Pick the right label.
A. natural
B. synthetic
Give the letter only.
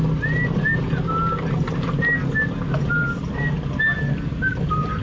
A